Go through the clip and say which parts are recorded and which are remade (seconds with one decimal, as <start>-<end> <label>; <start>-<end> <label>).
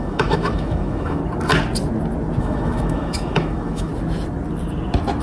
0.0-1.2 remade; 1.2-2.4 recorded; 2.4-3.9 remade; 3.9-5.2 recorded